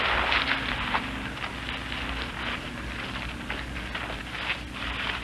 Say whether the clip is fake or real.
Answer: real